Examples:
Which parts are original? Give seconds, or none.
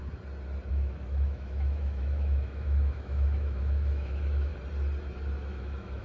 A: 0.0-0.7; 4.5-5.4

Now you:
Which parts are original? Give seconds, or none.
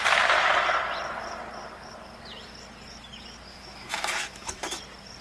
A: 0.0-3.5; 4.8-5.2